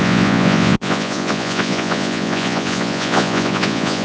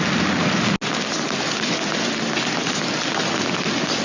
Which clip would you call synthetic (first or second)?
first